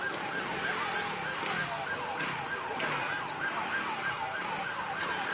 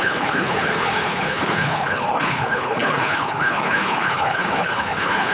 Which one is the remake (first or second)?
second